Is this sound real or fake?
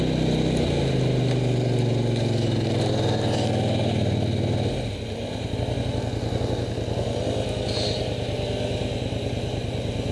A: real